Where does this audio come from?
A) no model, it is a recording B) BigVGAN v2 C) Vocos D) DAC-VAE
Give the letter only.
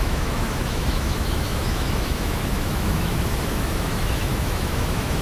D